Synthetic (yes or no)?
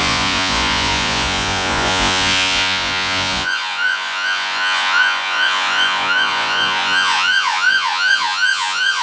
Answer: yes